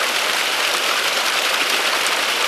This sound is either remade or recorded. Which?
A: recorded